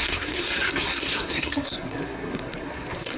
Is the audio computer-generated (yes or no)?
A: yes